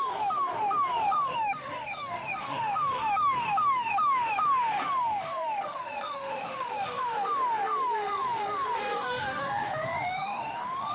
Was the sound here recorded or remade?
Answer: remade